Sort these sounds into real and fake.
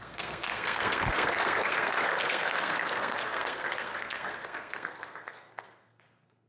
fake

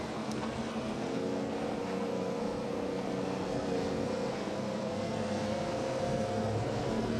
fake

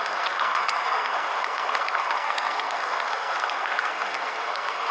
fake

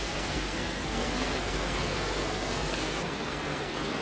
fake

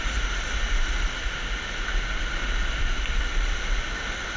real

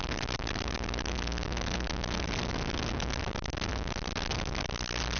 real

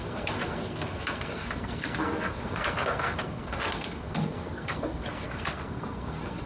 fake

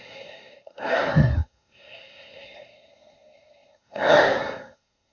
fake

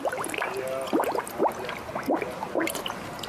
real